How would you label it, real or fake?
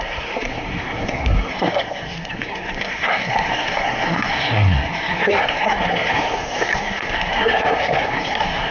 fake